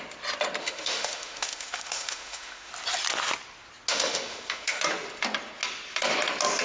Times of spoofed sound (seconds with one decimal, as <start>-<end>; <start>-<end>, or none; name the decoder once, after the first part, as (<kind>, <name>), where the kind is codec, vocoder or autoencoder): 0.6-2.7 (autoencoder, DAC-VAE); 3.9-4.8